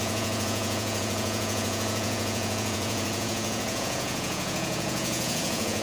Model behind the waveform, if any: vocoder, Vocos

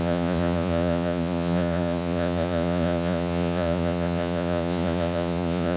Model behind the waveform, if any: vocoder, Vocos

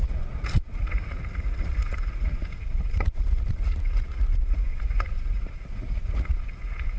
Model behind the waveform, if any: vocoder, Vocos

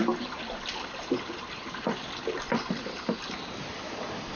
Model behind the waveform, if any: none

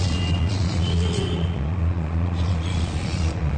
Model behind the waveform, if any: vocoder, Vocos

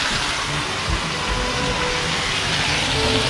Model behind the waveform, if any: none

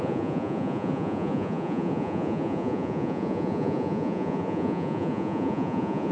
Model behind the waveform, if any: vocoder, Vocos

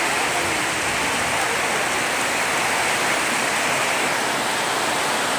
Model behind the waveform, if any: none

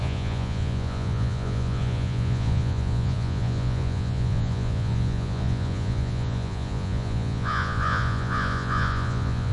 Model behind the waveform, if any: vocoder, Vocos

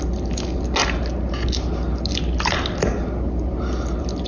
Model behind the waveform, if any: none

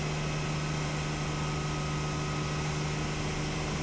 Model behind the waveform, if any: none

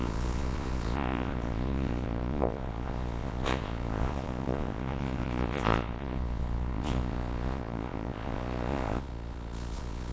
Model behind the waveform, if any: vocoder, Vocos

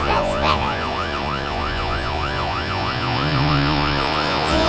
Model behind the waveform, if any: vocoder, Vocos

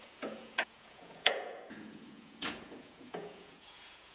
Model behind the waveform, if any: vocoder, Vocos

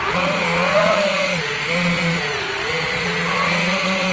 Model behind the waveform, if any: vocoder, Vocos